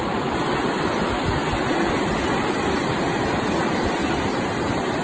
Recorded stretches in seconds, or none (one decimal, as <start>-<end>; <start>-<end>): 0.0-5.0